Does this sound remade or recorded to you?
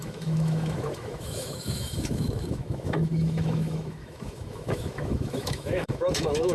remade